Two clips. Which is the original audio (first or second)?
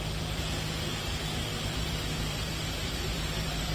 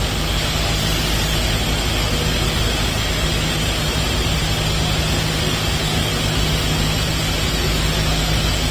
second